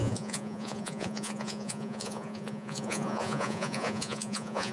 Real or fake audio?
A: fake